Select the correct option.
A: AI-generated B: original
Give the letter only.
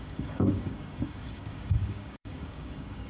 A